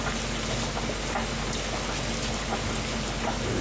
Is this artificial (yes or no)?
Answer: no